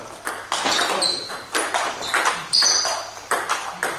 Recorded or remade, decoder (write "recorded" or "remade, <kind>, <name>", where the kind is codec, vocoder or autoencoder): remade, vocoder, BigVGAN v2